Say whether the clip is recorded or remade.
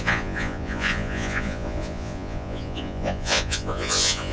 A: remade